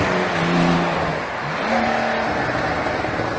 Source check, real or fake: real